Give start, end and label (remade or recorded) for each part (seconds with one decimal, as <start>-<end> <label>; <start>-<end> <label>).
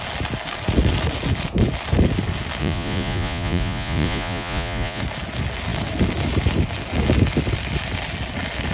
0.0-2.6 recorded; 2.6-5.0 remade; 5.0-8.7 recorded